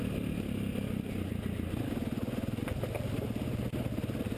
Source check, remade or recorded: recorded